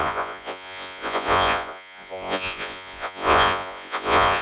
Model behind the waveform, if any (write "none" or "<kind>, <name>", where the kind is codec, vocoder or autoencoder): vocoder, Vocos